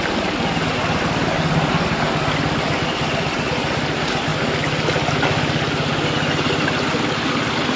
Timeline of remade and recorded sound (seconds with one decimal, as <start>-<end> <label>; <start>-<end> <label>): 0.0-7.8 recorded